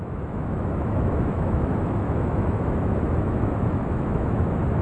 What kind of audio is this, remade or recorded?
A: remade